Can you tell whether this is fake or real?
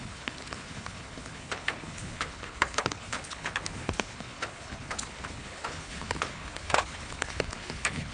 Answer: fake